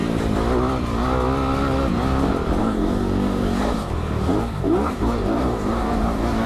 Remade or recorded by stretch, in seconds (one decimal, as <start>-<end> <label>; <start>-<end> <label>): 0.0-2.6 recorded; 2.6-6.5 remade